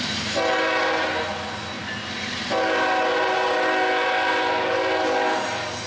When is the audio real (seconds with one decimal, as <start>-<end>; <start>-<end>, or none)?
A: 0.0-5.9

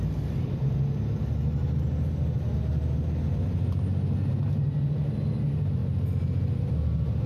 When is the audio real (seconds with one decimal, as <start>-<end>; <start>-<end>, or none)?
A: 0.0-7.3

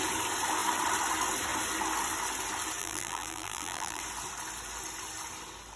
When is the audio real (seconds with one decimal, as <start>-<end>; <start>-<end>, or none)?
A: 0.0-2.8; 4.0-5.8